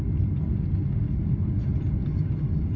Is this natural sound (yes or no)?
yes